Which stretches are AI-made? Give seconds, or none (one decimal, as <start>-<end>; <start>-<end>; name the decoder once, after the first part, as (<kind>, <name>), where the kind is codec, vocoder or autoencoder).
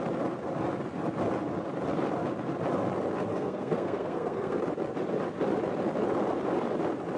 3.3-4.6 (codec, SNAC)